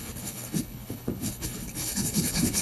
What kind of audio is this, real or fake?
fake